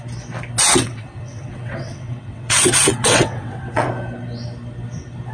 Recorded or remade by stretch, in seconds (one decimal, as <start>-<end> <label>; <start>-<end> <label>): 0.0-0.7 recorded; 0.7-3.9 remade; 3.9-5.3 recorded